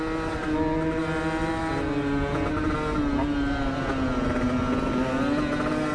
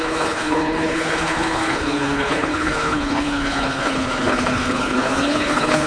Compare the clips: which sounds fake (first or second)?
second